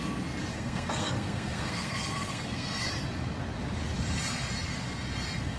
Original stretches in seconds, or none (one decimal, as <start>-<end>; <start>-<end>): 0.0-0.5; 2.9-5.6